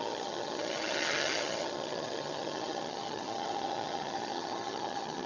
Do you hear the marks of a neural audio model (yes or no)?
yes